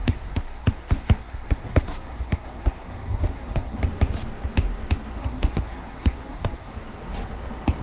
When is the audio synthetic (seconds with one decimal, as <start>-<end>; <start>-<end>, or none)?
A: 0.0-3.8; 5.2-6.7